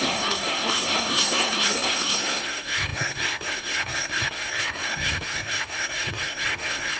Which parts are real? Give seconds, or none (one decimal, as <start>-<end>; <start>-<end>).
none